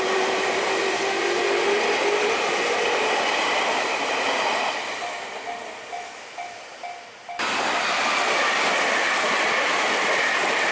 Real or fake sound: fake